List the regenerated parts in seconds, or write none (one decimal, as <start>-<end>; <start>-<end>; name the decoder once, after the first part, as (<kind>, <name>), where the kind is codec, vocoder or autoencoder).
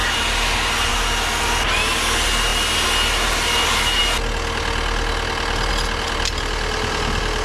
none